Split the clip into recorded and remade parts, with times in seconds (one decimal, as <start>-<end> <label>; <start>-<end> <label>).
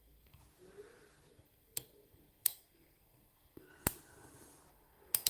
0.0-0.4 remade; 0.4-1.3 recorded; 1.3-3.7 remade; 3.7-4.7 recorded; 4.7-5.3 remade